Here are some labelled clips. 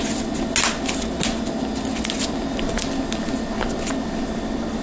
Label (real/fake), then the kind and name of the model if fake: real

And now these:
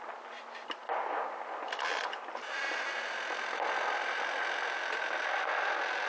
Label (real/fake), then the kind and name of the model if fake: real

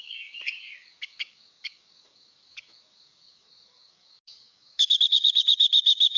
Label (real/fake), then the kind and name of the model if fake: fake, codec, DAC